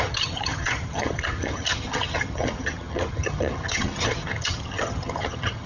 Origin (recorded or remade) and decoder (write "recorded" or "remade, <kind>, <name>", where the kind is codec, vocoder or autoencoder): remade, vocoder, HiFi-GAN